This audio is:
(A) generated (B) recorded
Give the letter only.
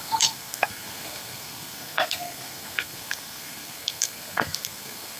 A